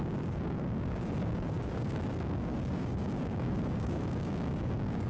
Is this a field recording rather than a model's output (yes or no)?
no